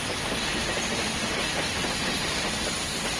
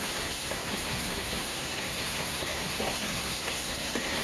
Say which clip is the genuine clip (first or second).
first